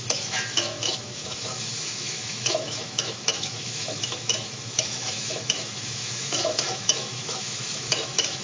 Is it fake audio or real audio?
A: fake